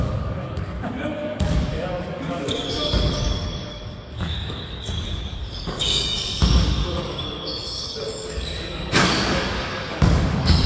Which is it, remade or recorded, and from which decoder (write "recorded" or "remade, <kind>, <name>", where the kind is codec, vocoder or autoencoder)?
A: remade, codec, DAC